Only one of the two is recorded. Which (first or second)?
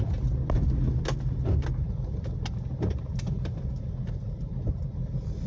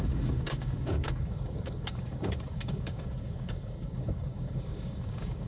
first